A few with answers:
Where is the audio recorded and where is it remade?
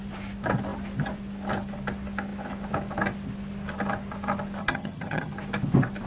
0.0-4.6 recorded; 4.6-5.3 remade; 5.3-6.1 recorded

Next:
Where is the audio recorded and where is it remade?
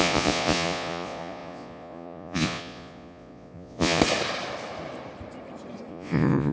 0.0-4.0 remade; 4.0-5.9 recorded; 5.9-6.5 remade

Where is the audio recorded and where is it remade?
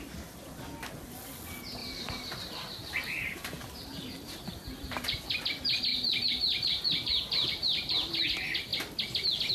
0.0-1.8 recorded; 1.8-5.3 remade; 5.3-5.9 recorded; 5.9-8.1 remade; 8.1-9.5 recorded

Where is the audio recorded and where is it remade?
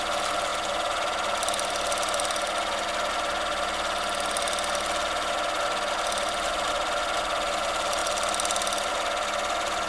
0.0-9.9 recorded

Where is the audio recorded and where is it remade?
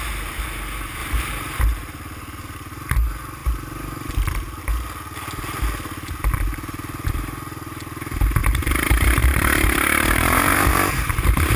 0.0-1.0 recorded; 1.0-1.6 remade; 1.6-3.4 recorded; 3.4-4.6 remade; 4.6-8.4 recorded; 8.4-11.6 remade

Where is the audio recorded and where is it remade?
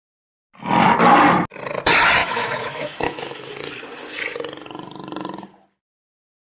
0.0-2.2 recorded; 2.2-3.5 remade; 3.5-6.4 recorded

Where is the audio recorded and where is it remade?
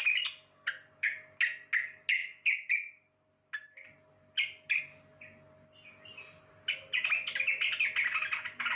0.0-8.8 recorded